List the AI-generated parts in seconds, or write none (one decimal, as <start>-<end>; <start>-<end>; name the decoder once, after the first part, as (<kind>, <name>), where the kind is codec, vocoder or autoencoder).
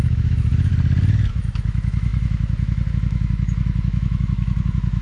0.0-0.7 (autoencoder, DAC-VAE); 1.3-5.0